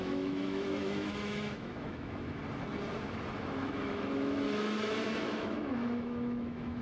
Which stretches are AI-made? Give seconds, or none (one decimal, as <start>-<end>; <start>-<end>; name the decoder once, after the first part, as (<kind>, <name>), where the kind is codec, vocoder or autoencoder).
0.0-2.4 (autoencoder, DAC-VAE); 3.4-6.8

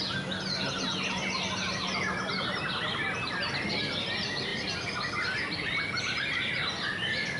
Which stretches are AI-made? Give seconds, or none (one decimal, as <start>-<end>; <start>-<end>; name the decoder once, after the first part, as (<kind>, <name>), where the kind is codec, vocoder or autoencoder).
none

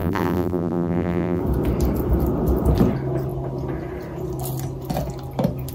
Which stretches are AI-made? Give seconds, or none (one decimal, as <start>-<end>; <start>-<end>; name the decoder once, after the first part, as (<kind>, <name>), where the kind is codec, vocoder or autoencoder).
0.0-1.4 (vocoder, BigVGAN v2)

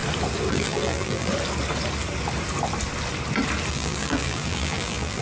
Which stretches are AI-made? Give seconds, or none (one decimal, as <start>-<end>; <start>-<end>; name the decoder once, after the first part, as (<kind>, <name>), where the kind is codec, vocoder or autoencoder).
0.5-1.3 (vocoder, BigVGAN v2); 3.7-5.2

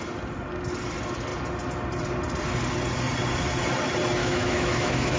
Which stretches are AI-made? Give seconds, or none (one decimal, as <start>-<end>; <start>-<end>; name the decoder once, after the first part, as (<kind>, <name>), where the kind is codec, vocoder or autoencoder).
4.2-5.2 (autoencoder, DAC-VAE)

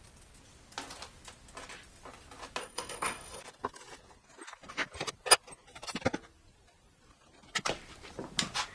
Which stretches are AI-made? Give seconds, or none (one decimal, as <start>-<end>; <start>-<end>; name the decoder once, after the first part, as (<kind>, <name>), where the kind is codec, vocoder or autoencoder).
2.6-3.4 (codec, SNAC)

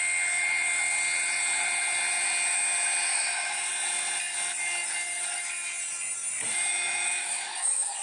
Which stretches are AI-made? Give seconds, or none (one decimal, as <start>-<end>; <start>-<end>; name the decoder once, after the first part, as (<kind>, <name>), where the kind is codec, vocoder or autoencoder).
3.1-3.7 (autoencoder, DAC-VAE); 6.7-8.0